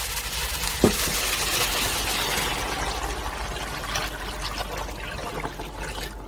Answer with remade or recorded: recorded